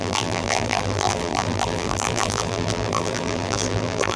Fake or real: fake